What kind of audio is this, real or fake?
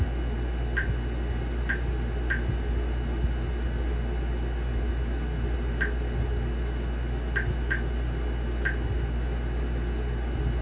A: real